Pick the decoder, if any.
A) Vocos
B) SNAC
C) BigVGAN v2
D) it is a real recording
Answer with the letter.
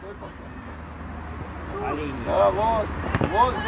D